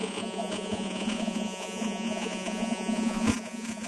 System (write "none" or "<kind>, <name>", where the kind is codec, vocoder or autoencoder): vocoder, Vocos